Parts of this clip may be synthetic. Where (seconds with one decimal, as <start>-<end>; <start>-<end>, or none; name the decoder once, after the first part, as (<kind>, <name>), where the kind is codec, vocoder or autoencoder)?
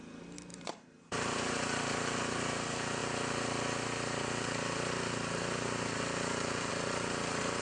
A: 0.5-1.6 (vocoder, BigVGAN v2)